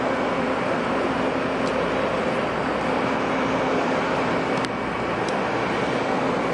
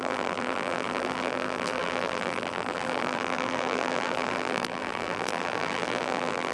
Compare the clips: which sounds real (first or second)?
first